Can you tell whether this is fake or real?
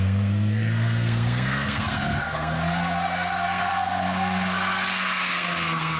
fake